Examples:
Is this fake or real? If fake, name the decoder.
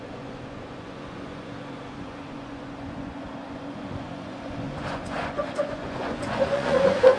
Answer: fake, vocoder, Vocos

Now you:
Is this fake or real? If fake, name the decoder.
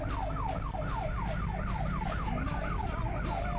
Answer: real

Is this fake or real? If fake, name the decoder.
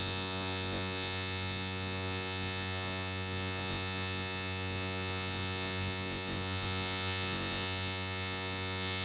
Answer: fake, vocoder, Vocos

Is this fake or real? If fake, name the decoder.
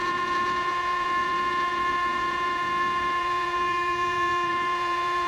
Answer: fake, vocoder, Vocos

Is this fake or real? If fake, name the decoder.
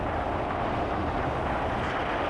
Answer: real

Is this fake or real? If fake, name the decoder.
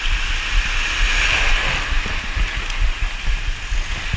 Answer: real